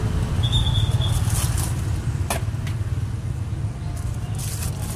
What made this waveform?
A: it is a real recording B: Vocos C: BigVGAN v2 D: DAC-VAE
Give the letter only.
A